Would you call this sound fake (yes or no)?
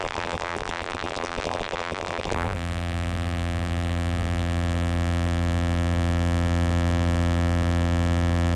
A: yes